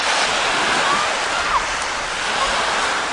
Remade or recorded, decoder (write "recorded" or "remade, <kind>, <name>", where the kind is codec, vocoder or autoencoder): recorded